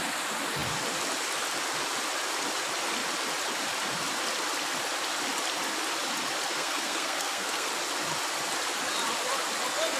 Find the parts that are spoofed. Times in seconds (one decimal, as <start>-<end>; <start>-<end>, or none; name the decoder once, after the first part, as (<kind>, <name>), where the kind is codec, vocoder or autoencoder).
6.5-7.7 (codec, SNAC)